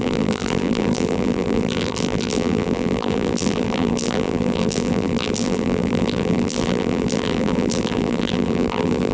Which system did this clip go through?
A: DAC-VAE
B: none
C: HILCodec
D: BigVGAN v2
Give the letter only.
D